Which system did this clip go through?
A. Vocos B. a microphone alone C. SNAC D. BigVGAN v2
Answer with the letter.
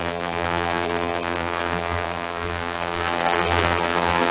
D